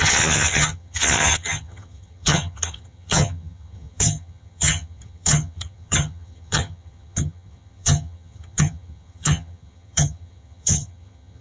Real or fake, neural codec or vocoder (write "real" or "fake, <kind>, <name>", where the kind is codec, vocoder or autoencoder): fake, vocoder, HiFi-GAN